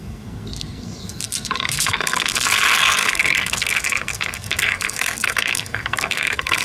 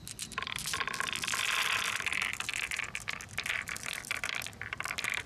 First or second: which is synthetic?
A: first